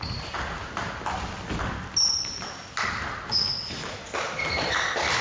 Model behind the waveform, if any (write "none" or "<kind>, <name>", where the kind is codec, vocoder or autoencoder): none